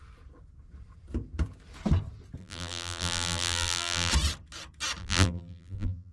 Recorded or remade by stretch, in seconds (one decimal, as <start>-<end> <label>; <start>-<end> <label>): 0.0-2.4 recorded; 2.4-4.1 remade; 4.1-5.0 recorded; 5.0-6.1 remade